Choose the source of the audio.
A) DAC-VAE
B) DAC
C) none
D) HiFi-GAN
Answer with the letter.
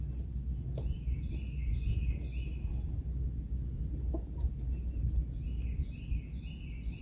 C